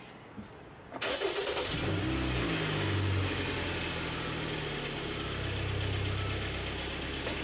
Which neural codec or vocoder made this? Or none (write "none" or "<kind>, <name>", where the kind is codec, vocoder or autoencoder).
none